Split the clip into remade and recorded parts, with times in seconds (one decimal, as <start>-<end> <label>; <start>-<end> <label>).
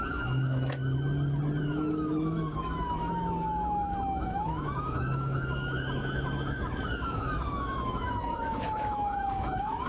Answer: 0.0-0.8 remade; 0.8-1.6 recorded; 1.6-9.9 remade